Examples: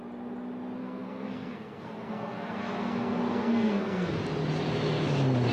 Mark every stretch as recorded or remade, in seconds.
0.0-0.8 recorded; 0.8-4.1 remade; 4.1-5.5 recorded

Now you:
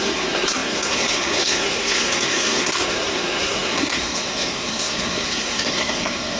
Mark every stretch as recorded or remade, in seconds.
0.0-6.4 remade